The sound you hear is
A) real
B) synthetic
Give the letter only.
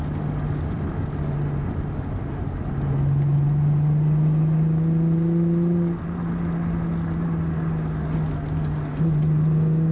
A